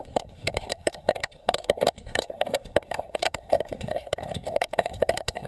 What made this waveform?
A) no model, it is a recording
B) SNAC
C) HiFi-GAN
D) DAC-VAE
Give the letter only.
B